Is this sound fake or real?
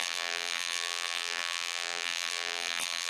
fake